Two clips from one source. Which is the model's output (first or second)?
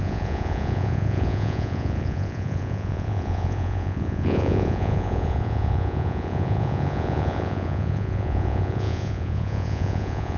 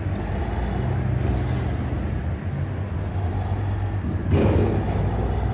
first